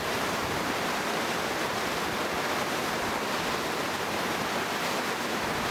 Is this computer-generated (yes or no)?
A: no